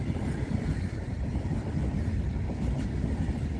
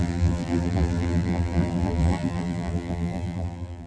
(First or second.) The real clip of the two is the first